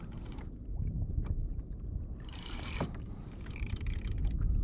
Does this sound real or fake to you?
fake